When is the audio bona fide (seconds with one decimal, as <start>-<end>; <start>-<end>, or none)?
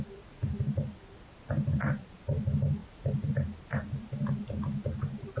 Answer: 0.0-5.4